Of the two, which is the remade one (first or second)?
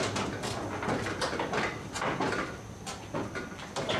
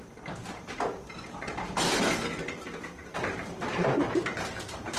second